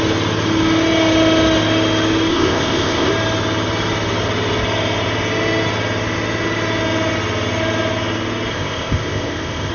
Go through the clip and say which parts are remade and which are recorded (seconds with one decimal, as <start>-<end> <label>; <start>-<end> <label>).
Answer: 0.0-2.3 recorded; 2.3-3.1 remade; 3.1-8.5 recorded; 8.5-9.7 remade